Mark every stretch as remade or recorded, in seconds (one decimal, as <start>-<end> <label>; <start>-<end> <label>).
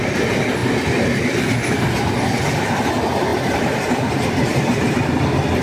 0.0-5.6 recorded